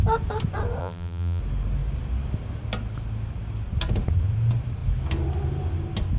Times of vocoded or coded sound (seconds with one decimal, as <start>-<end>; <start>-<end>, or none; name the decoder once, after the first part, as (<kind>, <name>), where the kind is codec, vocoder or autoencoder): 0.8-1.4 (vocoder, BigVGAN v2)